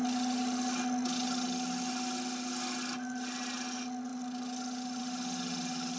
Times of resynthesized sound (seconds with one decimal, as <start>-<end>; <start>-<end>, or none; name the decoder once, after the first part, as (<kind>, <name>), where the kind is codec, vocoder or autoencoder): none